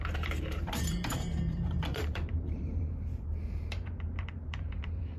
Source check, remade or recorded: remade